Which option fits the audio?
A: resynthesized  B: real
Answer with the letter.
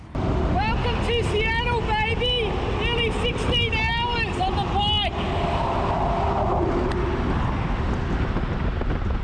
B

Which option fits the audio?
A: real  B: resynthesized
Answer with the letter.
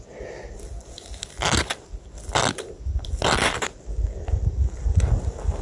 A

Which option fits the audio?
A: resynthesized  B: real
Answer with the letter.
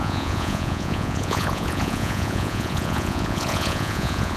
A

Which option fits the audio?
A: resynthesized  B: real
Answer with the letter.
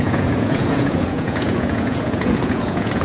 A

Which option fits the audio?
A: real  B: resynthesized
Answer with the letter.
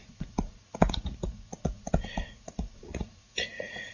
B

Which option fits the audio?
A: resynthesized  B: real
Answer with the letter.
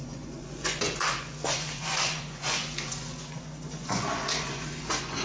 A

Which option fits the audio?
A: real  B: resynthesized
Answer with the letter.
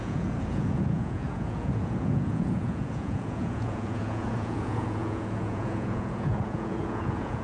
B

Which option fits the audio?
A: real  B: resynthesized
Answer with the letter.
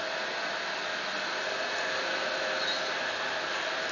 A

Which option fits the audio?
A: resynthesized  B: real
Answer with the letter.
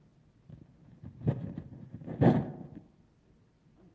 B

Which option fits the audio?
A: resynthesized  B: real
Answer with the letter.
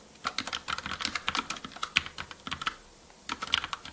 B